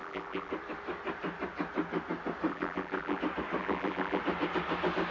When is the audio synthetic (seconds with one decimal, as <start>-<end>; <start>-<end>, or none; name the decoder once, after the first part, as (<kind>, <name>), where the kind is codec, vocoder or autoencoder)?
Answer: 0.0-0.5 (vocoder, BigVGAN v2); 2.5-3.2; 3.6-4.2